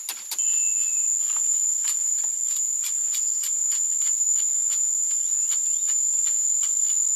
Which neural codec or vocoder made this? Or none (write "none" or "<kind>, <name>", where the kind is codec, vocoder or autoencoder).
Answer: none